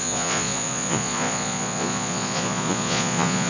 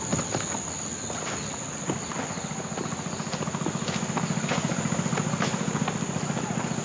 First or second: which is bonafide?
second